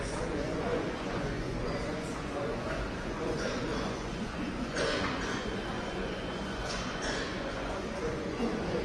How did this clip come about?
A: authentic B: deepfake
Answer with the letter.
B